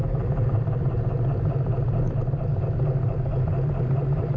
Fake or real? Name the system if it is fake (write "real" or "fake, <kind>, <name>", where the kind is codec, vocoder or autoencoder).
fake, vocoder, BigVGAN v2